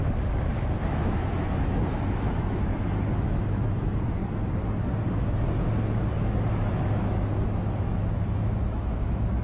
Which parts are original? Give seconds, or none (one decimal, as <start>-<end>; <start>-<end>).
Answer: 4.2-6.5